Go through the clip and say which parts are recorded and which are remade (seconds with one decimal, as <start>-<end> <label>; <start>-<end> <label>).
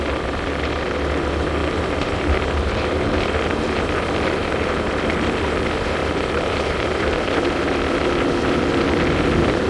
0.0-1.6 recorded; 1.6-2.9 remade; 2.9-4.4 recorded; 4.4-4.9 remade; 4.9-6.0 recorded; 6.0-7.3 remade; 7.3-9.7 recorded